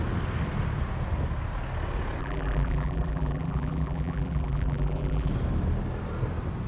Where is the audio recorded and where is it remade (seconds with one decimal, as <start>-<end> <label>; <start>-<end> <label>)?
0.0-2.2 recorded; 2.2-5.3 remade; 5.3-6.7 recorded